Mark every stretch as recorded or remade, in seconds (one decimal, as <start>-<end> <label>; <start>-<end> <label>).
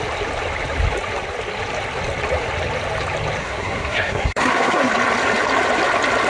0.0-3.4 recorded; 3.4-4.9 remade; 4.9-6.3 recorded